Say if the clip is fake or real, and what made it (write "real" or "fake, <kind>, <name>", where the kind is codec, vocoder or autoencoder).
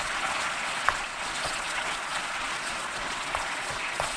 fake, vocoder, Vocos